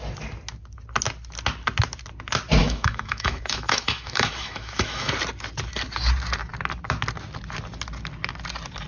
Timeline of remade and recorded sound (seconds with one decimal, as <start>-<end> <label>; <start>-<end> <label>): 0.0-2.6 recorded; 2.6-5.1 remade; 5.1-8.9 recorded